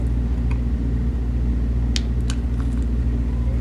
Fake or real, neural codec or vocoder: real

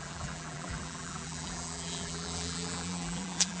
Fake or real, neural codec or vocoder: fake, vocoder, BigVGAN v2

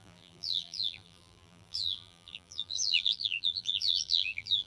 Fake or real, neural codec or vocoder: fake, vocoder, BigVGAN v2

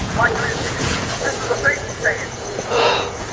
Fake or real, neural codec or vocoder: fake, vocoder, Vocos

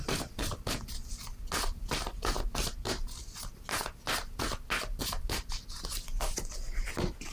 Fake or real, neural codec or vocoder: real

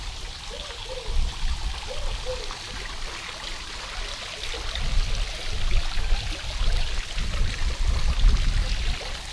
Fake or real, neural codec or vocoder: real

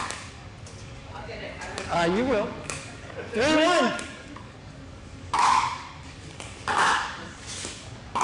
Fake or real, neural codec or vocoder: fake, codec, DAC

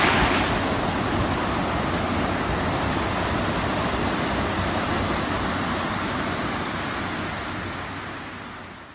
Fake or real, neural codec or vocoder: real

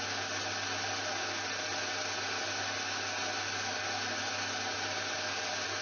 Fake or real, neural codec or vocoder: real